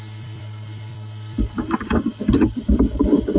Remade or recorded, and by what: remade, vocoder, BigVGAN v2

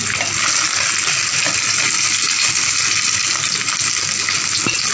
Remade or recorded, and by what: recorded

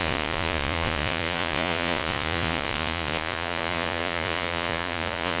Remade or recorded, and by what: remade, vocoder, Vocos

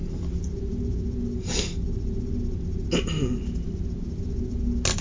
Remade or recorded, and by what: recorded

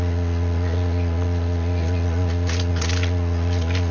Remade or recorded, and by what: remade, vocoder, Vocos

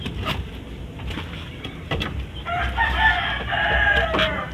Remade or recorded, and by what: remade, vocoder, BigVGAN v2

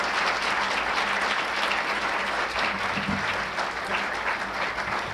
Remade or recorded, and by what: recorded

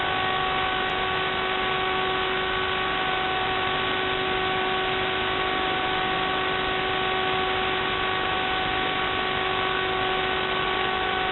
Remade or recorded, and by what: recorded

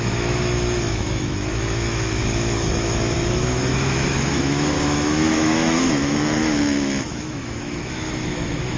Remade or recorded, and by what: remade, autoencoder, DAC-VAE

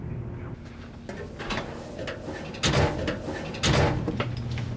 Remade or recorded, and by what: recorded